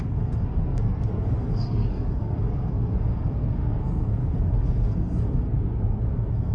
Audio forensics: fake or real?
fake